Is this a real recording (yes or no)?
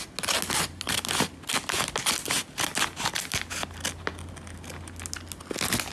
yes